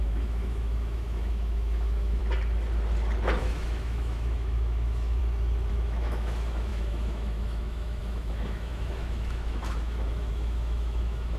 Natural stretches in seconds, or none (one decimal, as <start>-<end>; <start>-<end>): 2.2-3.4; 5.2-5.7